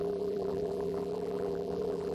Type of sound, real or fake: fake